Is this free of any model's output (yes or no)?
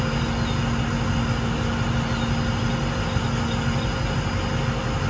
yes